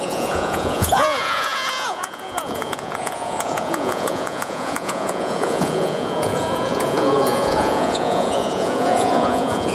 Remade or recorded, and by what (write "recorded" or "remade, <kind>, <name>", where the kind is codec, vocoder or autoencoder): remade, vocoder, Vocos